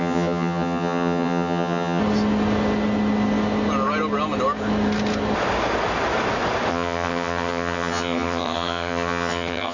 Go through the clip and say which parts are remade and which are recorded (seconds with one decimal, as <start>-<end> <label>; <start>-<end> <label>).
0.0-2.0 remade; 2.0-6.7 recorded; 6.7-9.7 remade